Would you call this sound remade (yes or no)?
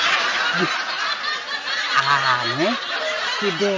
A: no